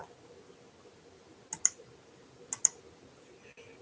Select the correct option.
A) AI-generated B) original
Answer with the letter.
B